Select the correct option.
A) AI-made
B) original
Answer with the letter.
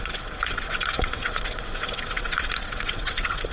A